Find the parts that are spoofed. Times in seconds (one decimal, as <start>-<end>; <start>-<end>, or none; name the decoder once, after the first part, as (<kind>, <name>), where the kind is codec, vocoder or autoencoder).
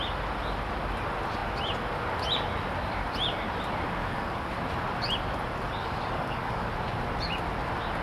4.0-4.5 (codec, DAC); 5.8-6.7